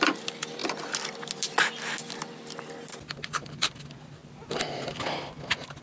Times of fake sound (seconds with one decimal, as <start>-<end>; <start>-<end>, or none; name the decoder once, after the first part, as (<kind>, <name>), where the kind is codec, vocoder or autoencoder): none